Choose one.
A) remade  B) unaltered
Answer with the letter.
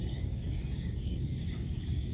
A